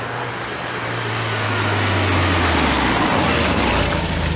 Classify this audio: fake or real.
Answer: real